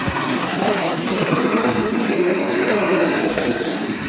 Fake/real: fake